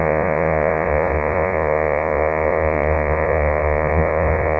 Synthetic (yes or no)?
yes